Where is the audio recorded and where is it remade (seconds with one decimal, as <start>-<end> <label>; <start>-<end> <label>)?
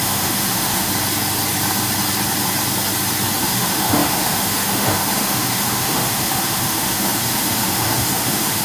0.0-0.9 remade; 0.9-3.4 recorded; 3.4-8.6 remade